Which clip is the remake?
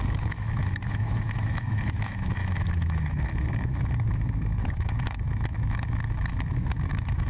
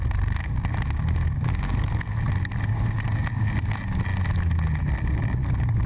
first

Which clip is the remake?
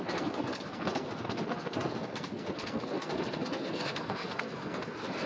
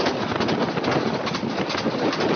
first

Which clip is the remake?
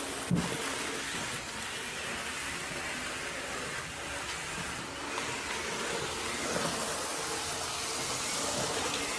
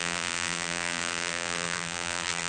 second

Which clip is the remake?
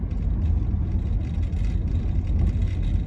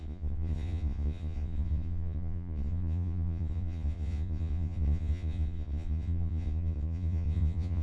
second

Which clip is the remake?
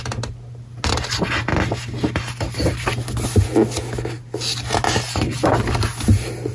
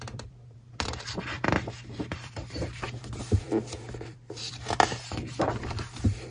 second